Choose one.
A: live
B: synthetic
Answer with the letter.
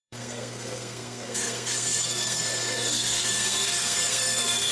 B